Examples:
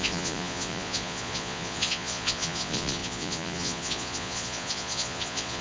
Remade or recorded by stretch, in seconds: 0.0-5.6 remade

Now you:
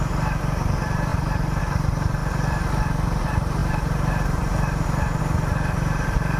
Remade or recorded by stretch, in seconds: 0.0-1.1 remade; 1.1-1.6 recorded; 1.6-2.2 remade; 2.2-3.2 recorded; 3.2-6.4 remade

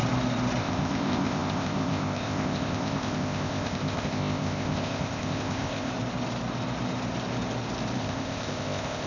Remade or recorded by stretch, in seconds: 0.0-0.6 recorded; 0.6-5.9 remade; 5.9-8.0 recorded; 8.0-9.1 remade

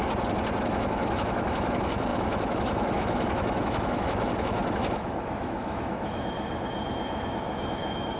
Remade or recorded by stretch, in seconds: 0.0-0.6 recorded; 0.6-8.2 remade